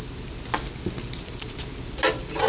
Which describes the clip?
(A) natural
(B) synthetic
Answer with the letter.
A